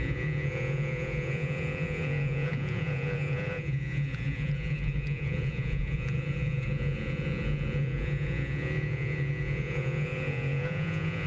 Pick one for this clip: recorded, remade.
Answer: remade